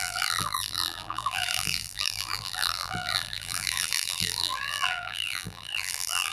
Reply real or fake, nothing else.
fake